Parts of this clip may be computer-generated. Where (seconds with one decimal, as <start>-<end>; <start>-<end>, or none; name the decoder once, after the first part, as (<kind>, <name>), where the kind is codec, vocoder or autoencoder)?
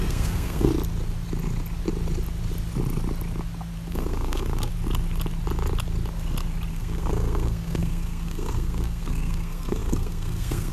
0.0-0.7 (codec, SNAC); 3.9-4.7; 6.7-10.7